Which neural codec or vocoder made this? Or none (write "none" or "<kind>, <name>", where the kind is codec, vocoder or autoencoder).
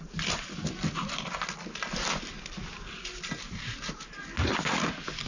none